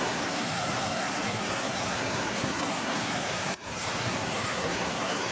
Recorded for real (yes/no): no